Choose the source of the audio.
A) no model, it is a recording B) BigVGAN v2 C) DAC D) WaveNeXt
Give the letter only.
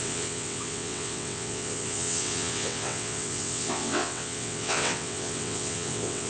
D